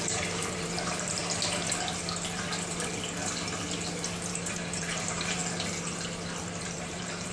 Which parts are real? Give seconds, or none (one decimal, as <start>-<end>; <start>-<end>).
1.2-4.3; 5.4-6.4